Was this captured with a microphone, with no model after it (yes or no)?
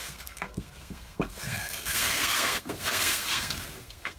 no